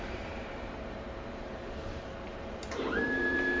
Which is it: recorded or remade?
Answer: remade